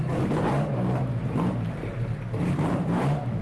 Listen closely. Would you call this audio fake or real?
fake